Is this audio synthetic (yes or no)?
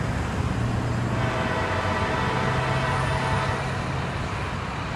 no